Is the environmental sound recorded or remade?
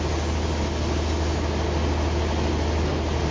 recorded